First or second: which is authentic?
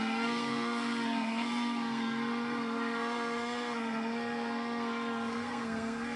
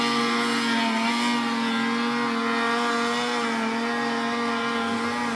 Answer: second